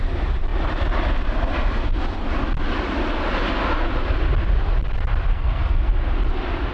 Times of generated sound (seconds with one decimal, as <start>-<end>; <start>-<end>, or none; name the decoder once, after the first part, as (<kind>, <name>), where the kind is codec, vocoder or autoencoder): 5.3-5.9 (codec, SNAC)